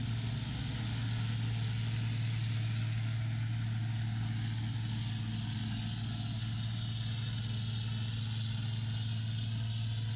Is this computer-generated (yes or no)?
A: no